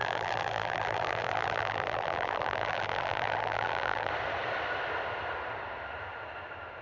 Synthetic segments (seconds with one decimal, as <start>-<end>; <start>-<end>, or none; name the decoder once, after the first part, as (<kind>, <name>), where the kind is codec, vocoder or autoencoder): 0.0-4.1 (vocoder, BigVGAN v2)